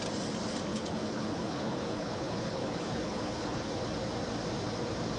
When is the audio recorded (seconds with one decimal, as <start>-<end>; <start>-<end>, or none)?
0.0-0.7; 3.8-5.2